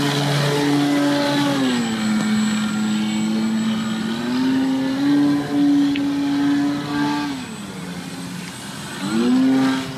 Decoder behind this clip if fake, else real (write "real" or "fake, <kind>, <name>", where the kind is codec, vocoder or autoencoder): real